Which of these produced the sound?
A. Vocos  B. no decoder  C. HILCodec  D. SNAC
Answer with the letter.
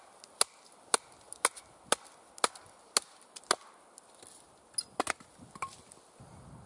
B